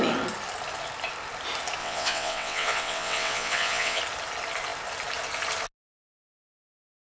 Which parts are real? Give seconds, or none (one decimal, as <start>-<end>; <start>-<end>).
0.0-1.8; 4.0-7.1